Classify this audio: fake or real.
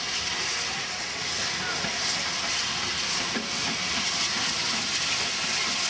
real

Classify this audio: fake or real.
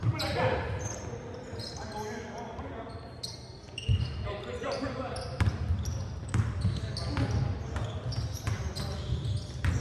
real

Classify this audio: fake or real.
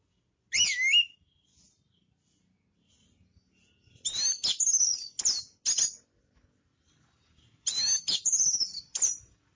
real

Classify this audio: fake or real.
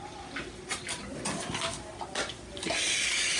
real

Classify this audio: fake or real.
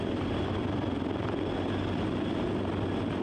real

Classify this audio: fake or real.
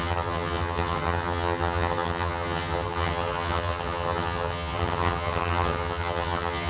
fake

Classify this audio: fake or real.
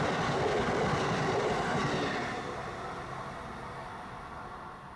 real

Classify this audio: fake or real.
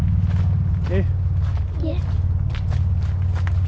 real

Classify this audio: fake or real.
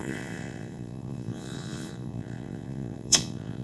fake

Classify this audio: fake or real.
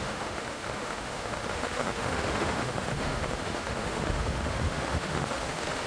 fake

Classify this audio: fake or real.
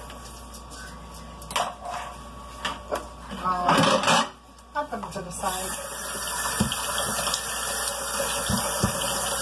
real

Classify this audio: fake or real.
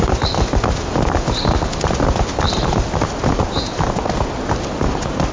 real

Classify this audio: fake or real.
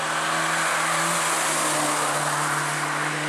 real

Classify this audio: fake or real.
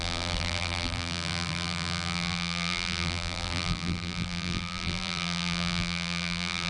fake